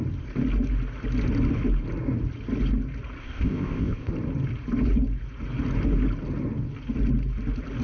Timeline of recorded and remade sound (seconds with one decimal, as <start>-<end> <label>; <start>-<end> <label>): 0.0-3.2 recorded; 3.2-4.1 remade; 4.1-7.8 recorded